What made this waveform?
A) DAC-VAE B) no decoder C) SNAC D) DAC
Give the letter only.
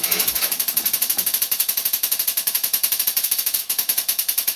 A